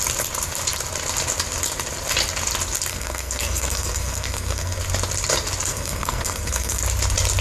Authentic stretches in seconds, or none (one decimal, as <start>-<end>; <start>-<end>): 0.0-2.9; 4.8-5.7; 6.8-7.4